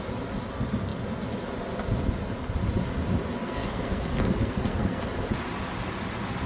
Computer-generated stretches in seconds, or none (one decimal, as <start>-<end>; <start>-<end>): 3.4-5.0